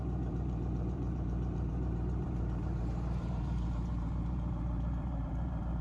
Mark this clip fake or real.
fake